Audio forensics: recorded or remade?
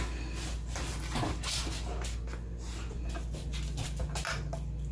recorded